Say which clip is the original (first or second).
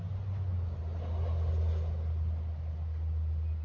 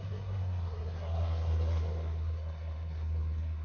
first